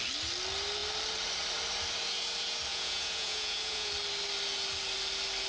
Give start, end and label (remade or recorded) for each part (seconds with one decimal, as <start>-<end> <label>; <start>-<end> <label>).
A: 0.0-2.7 recorded; 2.7-3.9 remade; 3.9-5.5 recorded

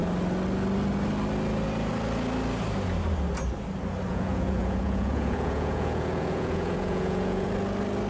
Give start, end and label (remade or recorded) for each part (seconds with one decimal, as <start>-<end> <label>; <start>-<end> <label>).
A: 0.0-4.1 recorded; 4.1-7.5 remade; 7.5-8.1 recorded

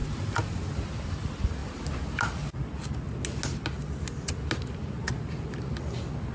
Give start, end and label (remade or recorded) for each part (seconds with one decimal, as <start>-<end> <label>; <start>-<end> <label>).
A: 0.0-6.3 recorded

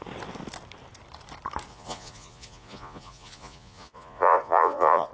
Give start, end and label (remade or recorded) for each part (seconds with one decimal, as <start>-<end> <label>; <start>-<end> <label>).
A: 0.0-1.7 recorded; 1.7-5.1 remade